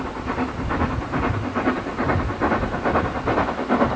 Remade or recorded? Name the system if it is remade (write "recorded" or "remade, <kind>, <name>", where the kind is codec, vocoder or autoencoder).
recorded